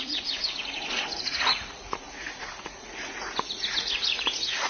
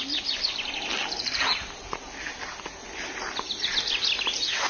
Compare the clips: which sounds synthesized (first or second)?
first